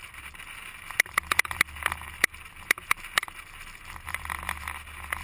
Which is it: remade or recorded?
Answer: recorded